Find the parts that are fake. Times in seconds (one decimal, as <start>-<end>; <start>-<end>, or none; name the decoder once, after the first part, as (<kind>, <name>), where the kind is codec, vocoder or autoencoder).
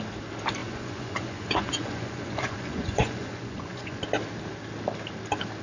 0.6-4.0 (vocoder, Vocos)